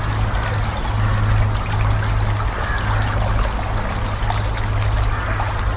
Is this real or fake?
real